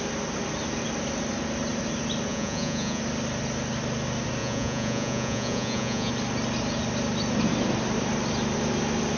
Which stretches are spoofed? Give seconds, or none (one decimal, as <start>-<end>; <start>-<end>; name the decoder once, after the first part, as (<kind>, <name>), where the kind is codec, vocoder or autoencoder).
2.3-3.0 (vocoder, Vocos); 4.4-6.1